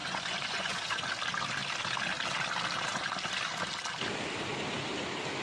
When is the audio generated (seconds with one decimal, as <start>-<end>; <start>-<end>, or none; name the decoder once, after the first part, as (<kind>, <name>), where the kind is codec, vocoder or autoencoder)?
0.0-1.0 (vocoder, Vocos)